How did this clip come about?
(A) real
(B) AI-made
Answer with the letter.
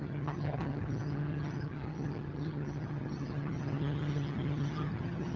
B